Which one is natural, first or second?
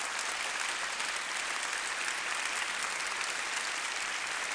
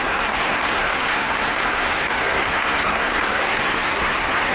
first